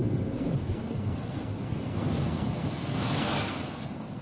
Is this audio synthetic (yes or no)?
yes